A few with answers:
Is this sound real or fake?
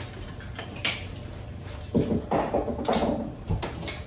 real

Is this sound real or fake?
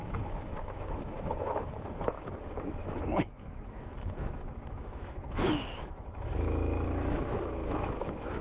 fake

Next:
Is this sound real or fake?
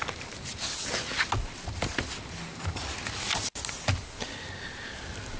real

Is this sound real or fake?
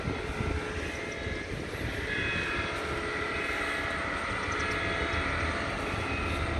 real